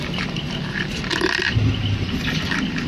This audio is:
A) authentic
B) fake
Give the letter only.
A